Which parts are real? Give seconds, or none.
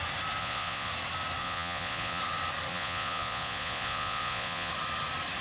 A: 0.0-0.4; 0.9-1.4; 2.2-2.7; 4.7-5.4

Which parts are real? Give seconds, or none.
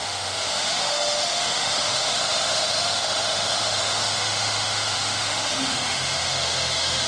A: none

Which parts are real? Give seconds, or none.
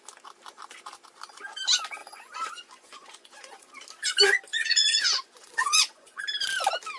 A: 0.0-2.0; 3.7-4.5; 6.2-7.0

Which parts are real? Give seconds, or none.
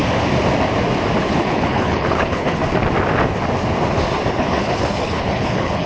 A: 0.0-1.2; 2.6-4.3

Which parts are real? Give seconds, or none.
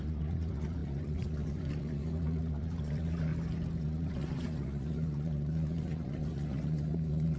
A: 3.3-3.8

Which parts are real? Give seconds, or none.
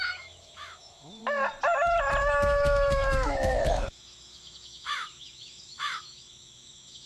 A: 1.2-2.2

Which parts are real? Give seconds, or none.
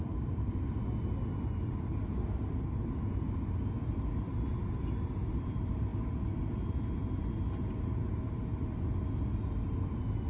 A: 0.0-10.3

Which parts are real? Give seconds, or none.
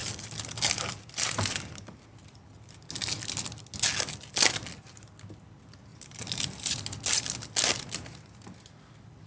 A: 0.0-5.9; 6.7-9.3